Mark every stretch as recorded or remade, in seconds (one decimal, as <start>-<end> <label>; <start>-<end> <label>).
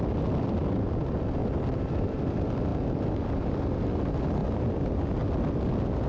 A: 0.0-1.4 recorded; 1.4-2.2 remade; 2.2-2.7 recorded; 2.7-3.5 remade; 3.5-4.4 recorded; 4.4-5.0 remade; 5.0-6.1 recorded